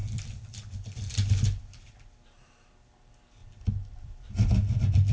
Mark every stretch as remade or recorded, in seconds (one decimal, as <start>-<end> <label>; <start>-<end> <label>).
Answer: 0.0-2.7 remade; 2.7-3.4 recorded; 3.4-4.3 remade; 4.3-5.1 recorded